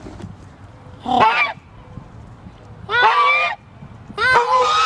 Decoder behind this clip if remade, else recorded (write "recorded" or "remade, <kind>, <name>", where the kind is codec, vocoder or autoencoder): recorded